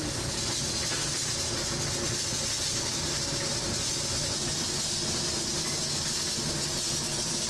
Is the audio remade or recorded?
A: recorded